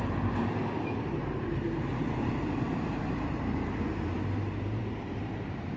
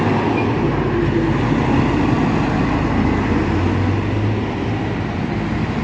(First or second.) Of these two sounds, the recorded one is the second